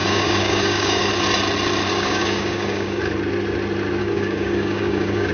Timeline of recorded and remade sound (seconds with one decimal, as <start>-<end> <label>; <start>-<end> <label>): 0.0-1.1 remade; 1.1-1.9 recorded; 1.9-3.0 remade; 3.0-4.0 recorded; 4.0-5.3 remade